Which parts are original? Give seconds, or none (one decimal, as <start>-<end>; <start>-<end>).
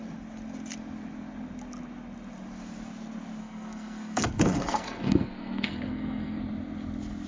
0.0-3.4; 6.4-7.3